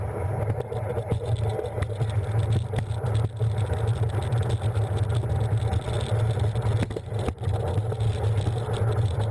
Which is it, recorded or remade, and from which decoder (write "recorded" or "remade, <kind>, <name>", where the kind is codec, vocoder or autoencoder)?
recorded